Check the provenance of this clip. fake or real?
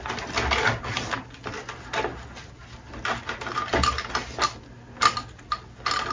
real